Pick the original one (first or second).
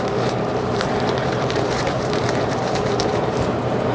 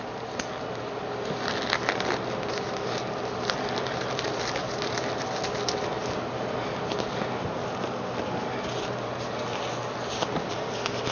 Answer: second